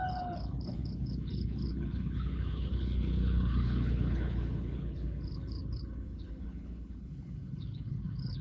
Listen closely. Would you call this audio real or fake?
fake